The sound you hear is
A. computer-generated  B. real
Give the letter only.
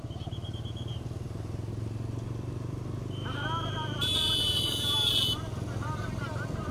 B